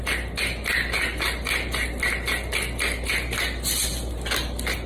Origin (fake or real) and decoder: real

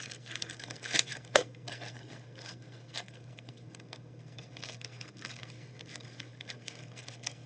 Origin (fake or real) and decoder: fake, codec, SNAC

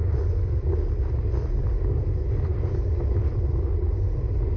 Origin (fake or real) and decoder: real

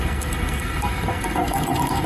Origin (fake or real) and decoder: fake, codec, SNAC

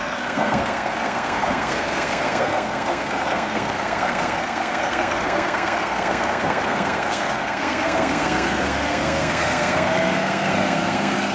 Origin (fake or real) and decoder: fake, codec, SNAC